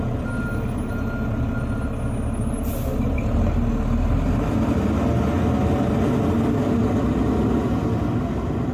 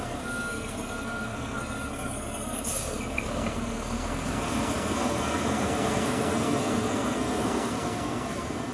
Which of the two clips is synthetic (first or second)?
second